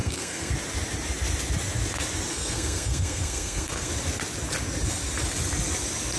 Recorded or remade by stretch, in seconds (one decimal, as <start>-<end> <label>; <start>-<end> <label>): 0.0-0.5 remade; 0.5-2.3 recorded; 2.3-3.9 remade; 3.9-6.2 recorded